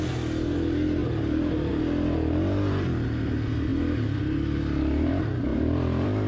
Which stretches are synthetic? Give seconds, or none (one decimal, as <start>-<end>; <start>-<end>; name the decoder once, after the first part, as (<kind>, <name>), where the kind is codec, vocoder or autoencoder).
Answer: 5.5-6.3 (vocoder, BigVGAN v2)